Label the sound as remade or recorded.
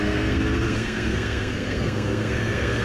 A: remade